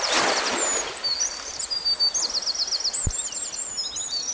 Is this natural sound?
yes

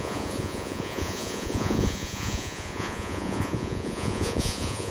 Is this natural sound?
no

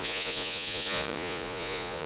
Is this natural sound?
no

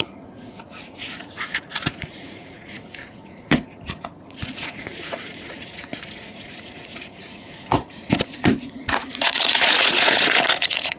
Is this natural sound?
no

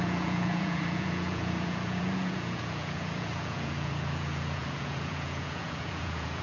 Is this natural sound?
no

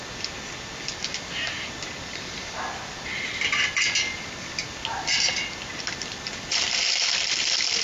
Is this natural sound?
yes